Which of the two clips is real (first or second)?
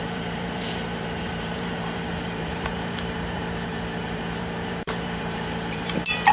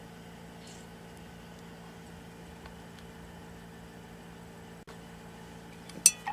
second